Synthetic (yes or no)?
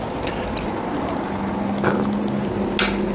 no